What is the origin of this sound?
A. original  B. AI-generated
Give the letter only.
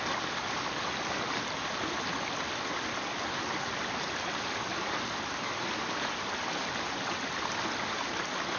A